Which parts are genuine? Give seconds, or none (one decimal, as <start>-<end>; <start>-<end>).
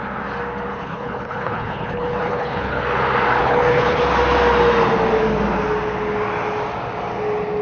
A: 0.0-0.7; 2.8-3.4; 4.0-7.6